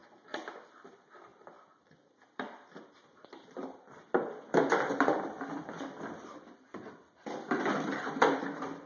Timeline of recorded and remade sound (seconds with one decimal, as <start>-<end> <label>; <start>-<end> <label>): 0.0-8.9 remade